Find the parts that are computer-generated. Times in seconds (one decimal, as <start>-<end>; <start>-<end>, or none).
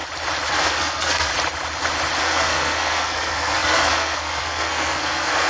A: 0.5-1.3; 2.2-5.5